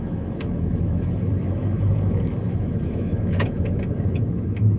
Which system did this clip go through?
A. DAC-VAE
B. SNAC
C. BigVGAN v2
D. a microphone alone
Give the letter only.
A